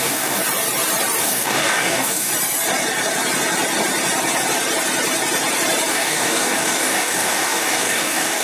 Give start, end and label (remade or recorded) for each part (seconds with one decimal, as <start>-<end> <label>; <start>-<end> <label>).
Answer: 0.0-0.4 remade; 0.4-1.2 recorded; 1.2-2.3 remade; 2.3-5.9 recorded; 5.9-8.4 remade